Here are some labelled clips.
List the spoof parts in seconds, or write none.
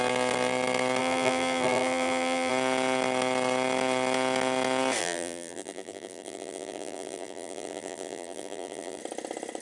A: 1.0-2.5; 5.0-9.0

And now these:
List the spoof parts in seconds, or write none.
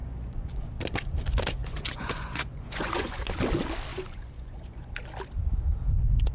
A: 0.0-0.6; 1.6-3.2; 3.9-4.9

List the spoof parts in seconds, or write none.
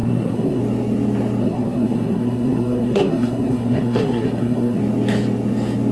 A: 0.0-0.6; 1.4-4.8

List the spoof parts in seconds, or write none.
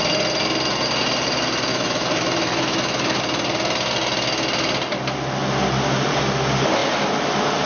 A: 1.7-3.2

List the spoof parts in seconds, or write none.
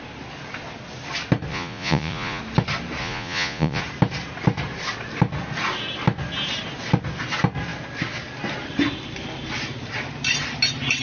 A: 1.5-2.4; 3.0-3.8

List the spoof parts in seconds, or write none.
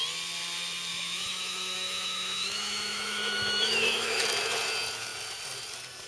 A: 0.9-4.2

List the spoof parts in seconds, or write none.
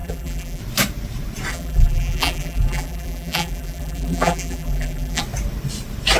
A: 0.0-0.6; 1.5-5.2